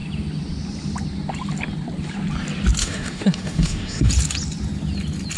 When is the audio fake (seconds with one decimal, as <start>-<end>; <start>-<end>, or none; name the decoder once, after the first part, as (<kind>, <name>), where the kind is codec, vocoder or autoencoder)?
2.8-4.1 (autoencoder, DAC-VAE)